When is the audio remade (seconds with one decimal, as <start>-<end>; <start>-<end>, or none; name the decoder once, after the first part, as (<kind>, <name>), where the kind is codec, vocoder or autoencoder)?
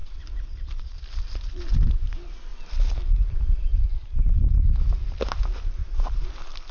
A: 0.0-1.1 (vocoder, BigVGAN v2); 5.8-6.3